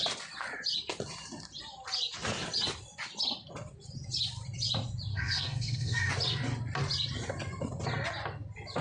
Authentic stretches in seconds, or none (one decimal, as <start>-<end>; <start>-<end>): 0.0-5.1; 6.1-8.8